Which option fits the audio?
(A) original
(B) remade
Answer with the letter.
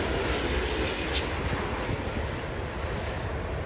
A